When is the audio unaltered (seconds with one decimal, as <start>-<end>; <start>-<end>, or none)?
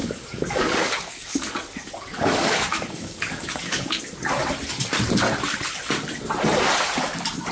4.0-7.5